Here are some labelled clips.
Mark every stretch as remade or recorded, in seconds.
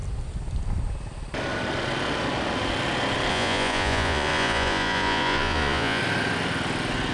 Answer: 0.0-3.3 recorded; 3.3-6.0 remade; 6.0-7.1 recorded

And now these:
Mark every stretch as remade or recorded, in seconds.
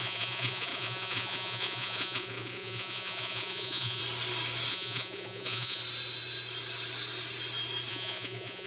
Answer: 0.0-4.0 remade; 4.0-4.7 recorded; 4.7-5.8 remade; 5.8-7.9 recorded; 7.9-8.7 remade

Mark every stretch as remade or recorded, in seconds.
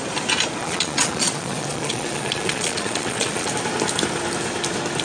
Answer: 0.0-0.6 recorded; 0.6-3.5 remade; 3.5-5.0 recorded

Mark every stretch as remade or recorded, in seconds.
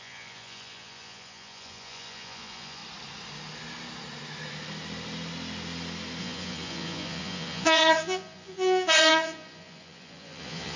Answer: 0.0-2.8 remade; 2.8-6.2 recorded; 6.2-10.8 remade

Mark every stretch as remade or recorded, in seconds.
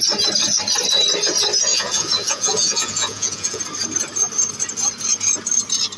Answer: 0.0-1.7 recorded; 1.7-3.6 remade; 3.6-6.0 recorded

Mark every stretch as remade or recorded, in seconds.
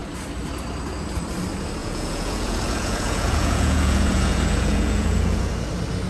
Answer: 0.0-1.8 recorded; 1.8-5.5 remade; 5.5-6.1 recorded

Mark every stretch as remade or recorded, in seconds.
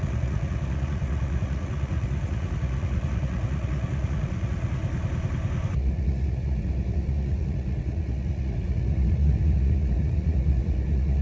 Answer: 0.0-4.8 remade; 4.8-5.7 recorded; 5.7-11.2 remade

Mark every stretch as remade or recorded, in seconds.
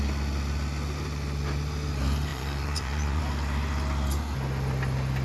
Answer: 0.0-2.3 recorded; 2.3-3.2 remade; 3.2-5.2 recorded